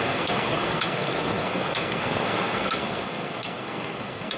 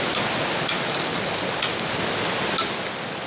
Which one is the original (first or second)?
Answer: second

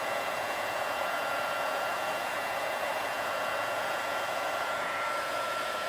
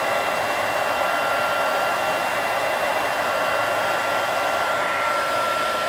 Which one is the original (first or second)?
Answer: second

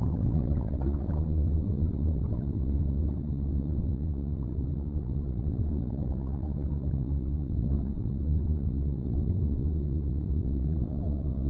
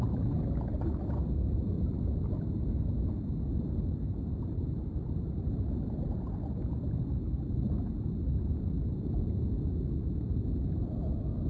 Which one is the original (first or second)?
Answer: second